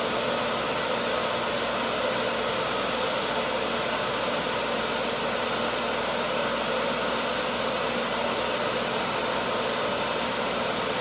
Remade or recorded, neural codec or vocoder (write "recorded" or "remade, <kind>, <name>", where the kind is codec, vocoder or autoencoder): recorded